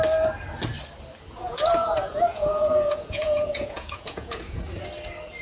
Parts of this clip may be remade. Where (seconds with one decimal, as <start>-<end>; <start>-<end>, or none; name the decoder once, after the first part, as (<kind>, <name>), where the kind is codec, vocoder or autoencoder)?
1.4-4.6 (vocoder, Vocos)